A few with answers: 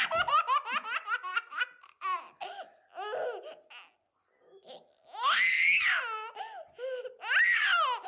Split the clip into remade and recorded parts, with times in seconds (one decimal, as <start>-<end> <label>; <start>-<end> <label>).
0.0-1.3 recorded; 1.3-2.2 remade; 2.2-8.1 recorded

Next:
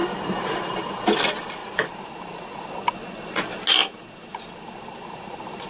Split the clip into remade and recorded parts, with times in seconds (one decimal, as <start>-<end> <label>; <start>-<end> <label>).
0.0-0.9 remade; 0.9-1.6 recorded; 1.6-2.1 remade; 2.1-5.7 recorded

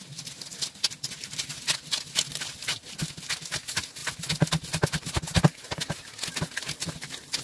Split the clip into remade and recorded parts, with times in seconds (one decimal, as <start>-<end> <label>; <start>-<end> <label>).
0.0-7.4 recorded